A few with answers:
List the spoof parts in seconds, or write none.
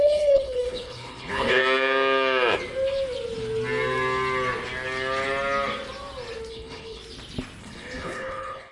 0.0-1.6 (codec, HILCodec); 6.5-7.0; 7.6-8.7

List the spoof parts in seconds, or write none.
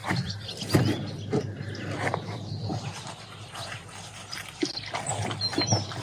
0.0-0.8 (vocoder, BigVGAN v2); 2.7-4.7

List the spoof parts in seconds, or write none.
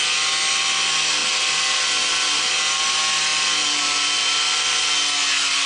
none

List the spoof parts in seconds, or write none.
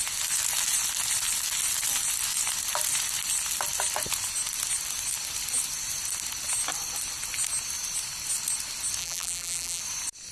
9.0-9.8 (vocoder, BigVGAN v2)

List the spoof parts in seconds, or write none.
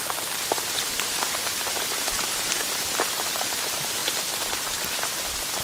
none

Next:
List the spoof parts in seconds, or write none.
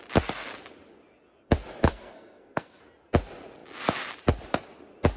1.9-2.8 (codec, SNAC)